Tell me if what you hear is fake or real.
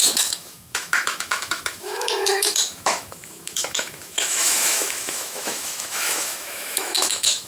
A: fake